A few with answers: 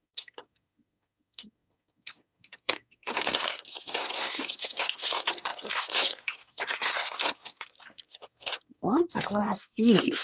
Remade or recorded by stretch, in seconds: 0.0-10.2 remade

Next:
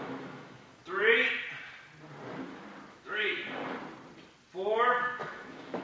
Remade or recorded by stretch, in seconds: 0.0-0.8 remade; 0.8-2.9 recorded; 2.9-3.4 remade; 3.4-5.0 recorded; 5.0-5.8 remade

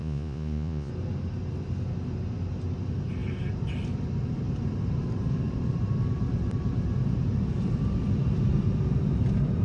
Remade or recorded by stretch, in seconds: 0.0-0.9 remade; 0.9-9.6 recorded

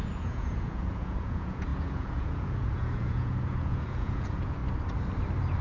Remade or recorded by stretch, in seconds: 0.0-4.6 remade; 4.6-5.6 recorded

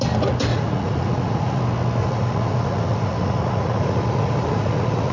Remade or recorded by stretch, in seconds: 0.0-0.5 recorded; 0.5-1.6 remade; 1.6-2.0 recorded; 2.0-5.1 remade